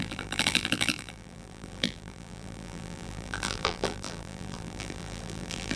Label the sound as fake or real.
fake